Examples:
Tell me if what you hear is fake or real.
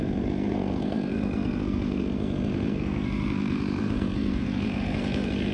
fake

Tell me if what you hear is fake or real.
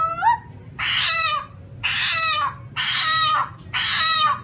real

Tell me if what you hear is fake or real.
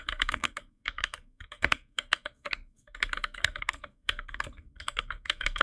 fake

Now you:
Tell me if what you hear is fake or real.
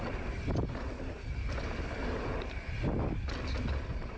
real